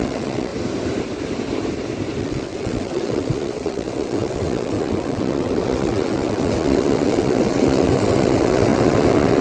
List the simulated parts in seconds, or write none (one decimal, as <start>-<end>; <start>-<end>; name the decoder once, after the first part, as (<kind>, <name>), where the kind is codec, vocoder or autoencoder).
0.0-0.5 (vocoder, WaveNeXt); 2.2-9.4